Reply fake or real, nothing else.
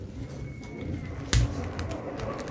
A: real